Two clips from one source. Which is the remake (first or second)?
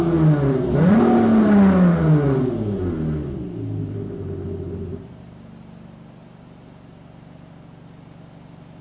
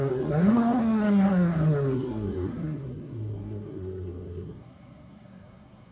second